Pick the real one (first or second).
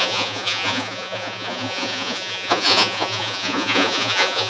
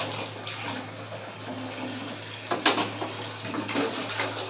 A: second